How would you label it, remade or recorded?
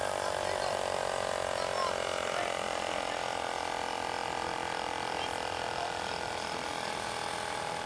recorded